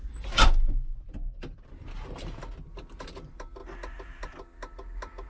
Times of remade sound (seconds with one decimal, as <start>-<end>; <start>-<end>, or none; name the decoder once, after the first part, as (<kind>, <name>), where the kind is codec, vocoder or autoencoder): none